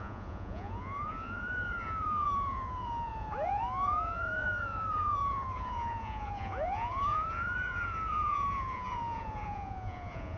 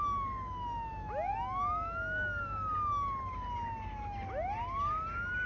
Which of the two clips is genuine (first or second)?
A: second